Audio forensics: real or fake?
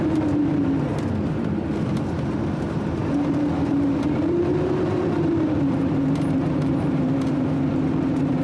fake